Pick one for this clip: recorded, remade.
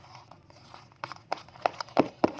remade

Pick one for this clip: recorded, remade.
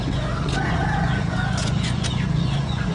remade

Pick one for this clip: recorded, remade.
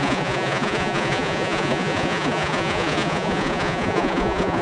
remade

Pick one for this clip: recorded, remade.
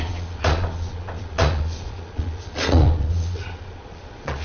remade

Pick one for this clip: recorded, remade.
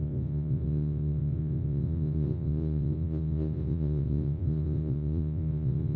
remade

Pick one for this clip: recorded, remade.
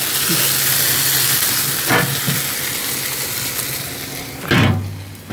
recorded